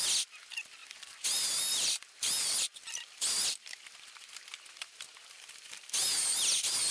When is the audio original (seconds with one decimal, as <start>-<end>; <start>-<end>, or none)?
0.0-6.9